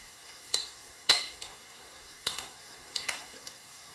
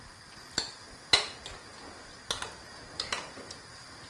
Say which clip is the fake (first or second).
first